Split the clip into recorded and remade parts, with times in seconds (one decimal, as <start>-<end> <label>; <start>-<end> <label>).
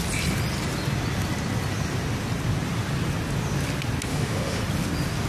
0.0-4.1 recorded; 4.1-4.6 remade; 4.6-5.3 recorded